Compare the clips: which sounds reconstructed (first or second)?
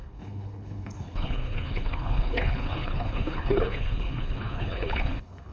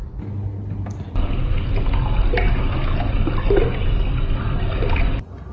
first